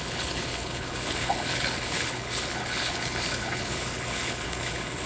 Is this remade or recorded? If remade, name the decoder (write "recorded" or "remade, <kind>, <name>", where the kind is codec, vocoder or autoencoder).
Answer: remade, codec, HILCodec